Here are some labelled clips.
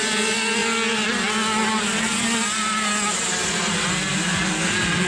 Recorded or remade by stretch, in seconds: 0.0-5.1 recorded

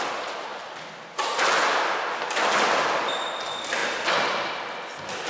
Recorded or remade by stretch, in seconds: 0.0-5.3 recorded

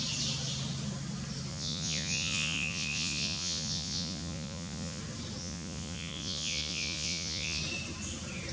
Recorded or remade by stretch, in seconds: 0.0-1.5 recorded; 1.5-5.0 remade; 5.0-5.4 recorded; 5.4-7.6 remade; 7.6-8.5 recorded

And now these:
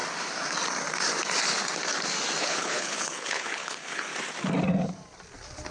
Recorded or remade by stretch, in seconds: 0.0-2.4 recorded; 2.4-4.1 remade; 4.1-5.7 recorded

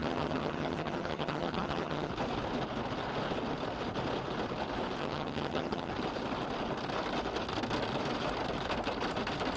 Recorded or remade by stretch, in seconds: 0.0-2.1 remade; 2.1-5.0 recorded; 5.0-5.9 remade; 5.9-9.6 recorded